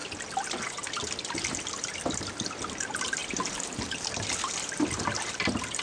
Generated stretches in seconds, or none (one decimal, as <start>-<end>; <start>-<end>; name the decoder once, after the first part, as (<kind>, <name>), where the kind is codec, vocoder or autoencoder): none